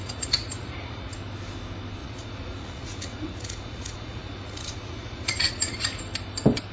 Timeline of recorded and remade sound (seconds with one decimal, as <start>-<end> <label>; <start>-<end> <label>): 0.0-1.1 remade; 1.1-2.0 recorded; 2.0-6.0 remade; 6.0-6.7 recorded